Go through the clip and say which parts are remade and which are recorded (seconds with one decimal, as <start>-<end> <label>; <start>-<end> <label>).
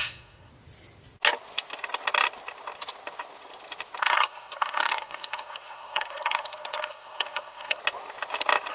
0.0-0.5 remade; 0.5-4.0 recorded; 4.0-7.8 remade; 7.8-8.7 recorded